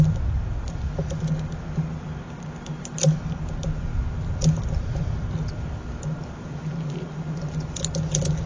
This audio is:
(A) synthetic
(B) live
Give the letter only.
B